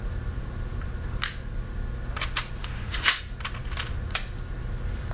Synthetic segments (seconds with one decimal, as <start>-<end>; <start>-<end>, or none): 2.6-3.2